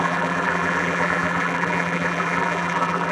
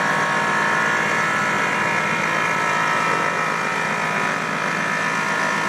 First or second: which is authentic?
second